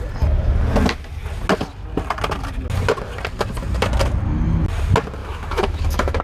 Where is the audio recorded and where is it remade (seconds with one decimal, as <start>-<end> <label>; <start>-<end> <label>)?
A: 0.0-5.2 recorded; 5.2-6.2 remade